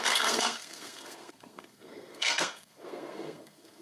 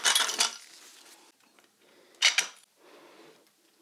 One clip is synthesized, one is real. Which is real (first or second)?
second